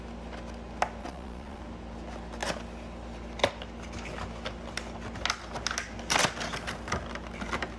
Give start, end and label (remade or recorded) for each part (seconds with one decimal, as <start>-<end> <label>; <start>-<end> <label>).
0.0-1.0 recorded; 1.0-1.6 remade; 1.6-7.8 recorded